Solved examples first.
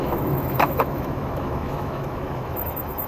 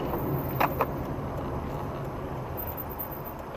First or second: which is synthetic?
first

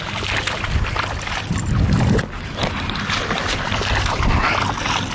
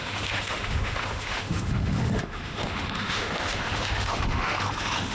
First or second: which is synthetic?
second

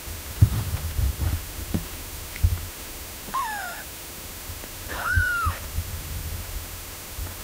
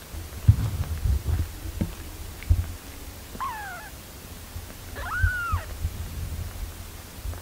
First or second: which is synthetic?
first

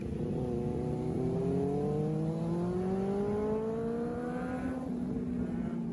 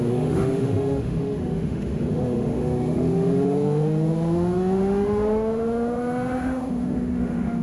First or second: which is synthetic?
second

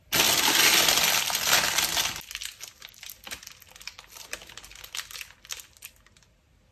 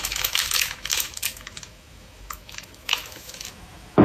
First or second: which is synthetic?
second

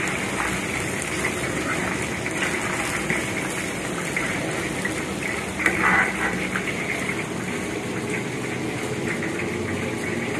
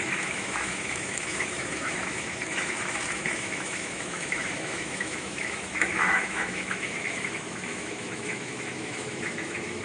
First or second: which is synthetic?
second